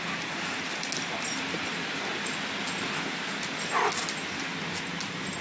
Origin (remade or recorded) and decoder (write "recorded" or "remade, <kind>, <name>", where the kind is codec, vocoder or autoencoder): recorded